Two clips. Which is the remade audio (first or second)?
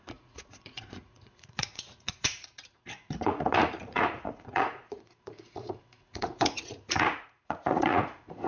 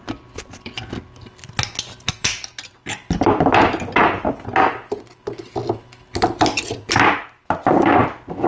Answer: first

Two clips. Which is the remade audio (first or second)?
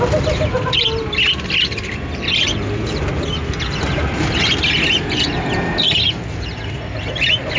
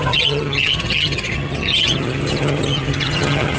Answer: second